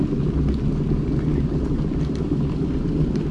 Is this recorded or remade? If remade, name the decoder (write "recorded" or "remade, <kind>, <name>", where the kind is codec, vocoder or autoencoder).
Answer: recorded